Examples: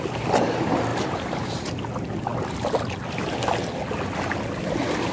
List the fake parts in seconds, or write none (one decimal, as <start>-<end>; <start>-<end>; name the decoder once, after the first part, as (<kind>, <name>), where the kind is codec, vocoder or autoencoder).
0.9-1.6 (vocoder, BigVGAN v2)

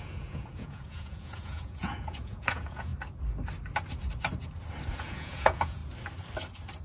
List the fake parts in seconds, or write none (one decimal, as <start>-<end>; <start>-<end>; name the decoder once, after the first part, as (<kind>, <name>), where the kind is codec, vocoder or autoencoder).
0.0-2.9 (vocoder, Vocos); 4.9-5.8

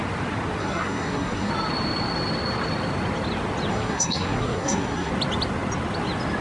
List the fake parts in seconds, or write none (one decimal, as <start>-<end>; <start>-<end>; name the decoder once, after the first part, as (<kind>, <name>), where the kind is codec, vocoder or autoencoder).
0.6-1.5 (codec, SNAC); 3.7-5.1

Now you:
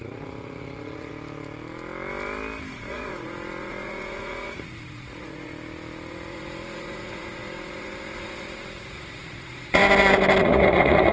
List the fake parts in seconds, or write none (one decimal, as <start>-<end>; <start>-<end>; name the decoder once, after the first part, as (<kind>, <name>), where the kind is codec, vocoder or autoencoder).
0.0-1.1 (vocoder, Vocos); 2.7-5.5; 6.1-9.8; 10.4-11.1